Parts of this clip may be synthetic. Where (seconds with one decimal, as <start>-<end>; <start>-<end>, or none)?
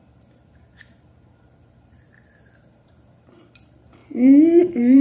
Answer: 0.0-4.0; 4.6-5.0